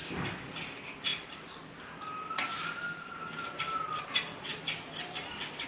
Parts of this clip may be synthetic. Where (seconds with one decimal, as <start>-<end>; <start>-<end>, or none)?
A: none